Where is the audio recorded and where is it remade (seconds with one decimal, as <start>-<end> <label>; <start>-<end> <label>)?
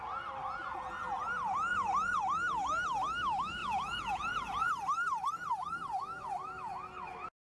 0.0-1.7 recorded; 1.7-2.2 remade; 2.2-3.6 recorded; 3.6-4.7 remade; 4.7-7.5 recorded